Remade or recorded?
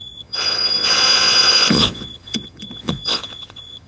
remade